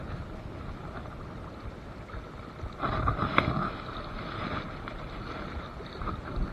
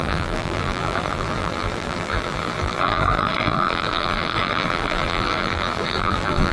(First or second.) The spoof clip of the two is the second